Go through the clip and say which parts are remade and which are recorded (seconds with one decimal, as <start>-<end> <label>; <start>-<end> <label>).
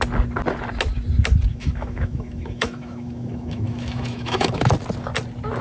0.0-1.5 recorded; 1.5-4.7 remade; 4.7-5.6 recorded